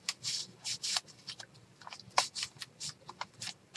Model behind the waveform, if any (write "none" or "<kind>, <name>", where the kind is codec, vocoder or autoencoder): none